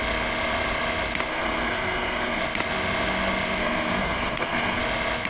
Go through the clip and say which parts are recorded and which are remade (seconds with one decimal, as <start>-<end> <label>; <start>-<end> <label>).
0.0-1.3 recorded; 1.3-2.4 remade; 2.4-3.6 recorded; 3.6-4.8 remade; 4.8-5.3 recorded

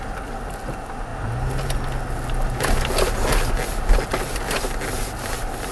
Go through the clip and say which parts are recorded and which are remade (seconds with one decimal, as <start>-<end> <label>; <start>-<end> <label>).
0.0-5.7 recorded

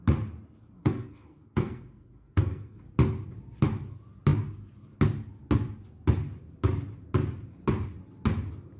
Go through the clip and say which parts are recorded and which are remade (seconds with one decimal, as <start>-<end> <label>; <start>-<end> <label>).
0.0-0.8 recorded; 0.8-2.8 remade; 2.8-8.8 recorded

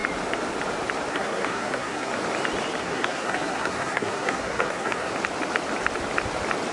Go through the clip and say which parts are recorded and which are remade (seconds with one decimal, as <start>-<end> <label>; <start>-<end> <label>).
0.0-1.1 recorded; 1.1-2.1 remade; 2.1-2.8 recorded; 2.8-5.1 remade; 5.1-6.7 recorded

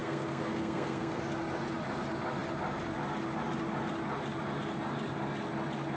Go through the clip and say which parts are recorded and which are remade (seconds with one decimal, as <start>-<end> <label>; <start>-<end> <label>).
0.0-1.2 remade; 1.2-6.0 recorded

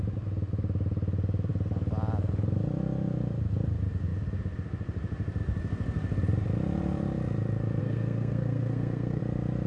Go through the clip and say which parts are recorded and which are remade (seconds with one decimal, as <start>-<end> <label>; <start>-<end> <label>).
0.0-7.8 recorded; 7.8-9.2 remade; 9.2-9.7 recorded